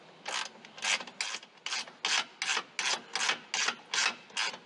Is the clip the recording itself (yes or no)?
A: yes